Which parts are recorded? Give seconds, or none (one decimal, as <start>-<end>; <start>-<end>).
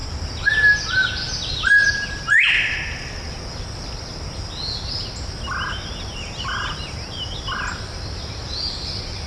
0.0-9.3